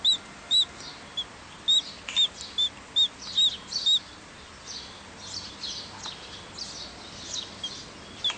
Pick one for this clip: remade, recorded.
recorded